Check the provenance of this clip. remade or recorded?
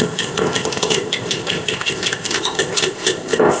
remade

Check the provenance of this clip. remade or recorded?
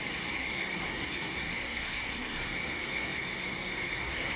remade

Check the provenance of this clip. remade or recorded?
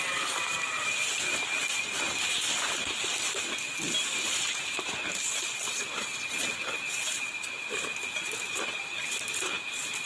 recorded